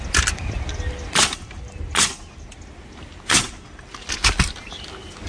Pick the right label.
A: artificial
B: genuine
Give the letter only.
B